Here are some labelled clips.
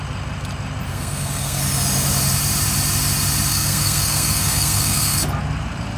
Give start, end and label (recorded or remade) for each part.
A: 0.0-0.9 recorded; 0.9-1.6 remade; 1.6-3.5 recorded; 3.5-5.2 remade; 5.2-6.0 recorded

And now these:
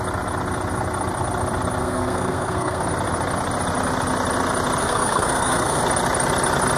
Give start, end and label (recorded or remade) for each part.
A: 0.0-1.8 recorded; 1.8-2.8 remade; 2.8-4.8 recorded; 4.8-5.8 remade; 5.8-6.8 recorded